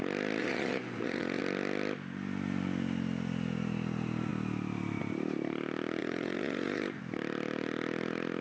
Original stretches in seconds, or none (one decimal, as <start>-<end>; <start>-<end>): 0.0-0.4; 1.4-6.0; 7.0-8.4

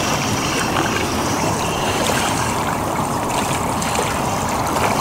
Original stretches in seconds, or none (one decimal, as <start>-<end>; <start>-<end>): 0.0-1.0; 3.3-5.0

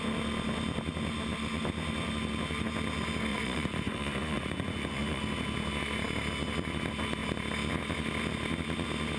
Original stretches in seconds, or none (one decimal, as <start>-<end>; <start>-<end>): 0.0-3.3; 5.2-9.2

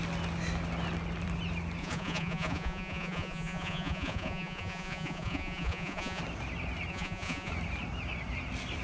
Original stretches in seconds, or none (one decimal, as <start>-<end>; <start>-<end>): 0.0-1.8; 6.2-6.9; 7.5-8.8

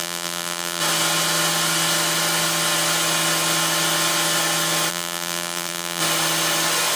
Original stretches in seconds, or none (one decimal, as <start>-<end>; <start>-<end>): 0.8-4.9; 6.0-7.0